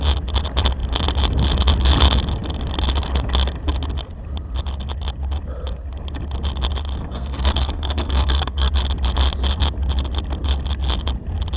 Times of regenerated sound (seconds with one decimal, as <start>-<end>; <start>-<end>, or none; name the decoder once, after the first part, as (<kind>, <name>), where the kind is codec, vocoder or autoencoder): 7.0-8.7 (codec, SNAC)